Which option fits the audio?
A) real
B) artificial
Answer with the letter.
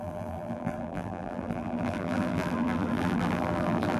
B